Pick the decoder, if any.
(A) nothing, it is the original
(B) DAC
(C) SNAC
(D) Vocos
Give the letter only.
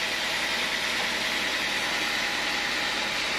A